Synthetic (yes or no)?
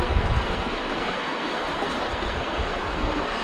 yes